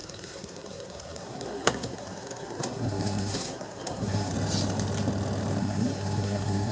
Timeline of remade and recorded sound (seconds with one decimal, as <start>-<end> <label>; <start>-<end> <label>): 0.0-4.3 remade; 4.3-5.6 recorded; 5.6-6.7 remade